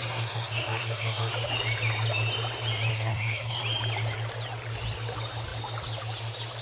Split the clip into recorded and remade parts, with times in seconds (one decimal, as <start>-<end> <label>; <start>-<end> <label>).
0.0-1.3 remade; 1.3-2.9 recorded; 2.9-3.6 remade; 3.6-6.6 recorded